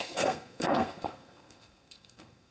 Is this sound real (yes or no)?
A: no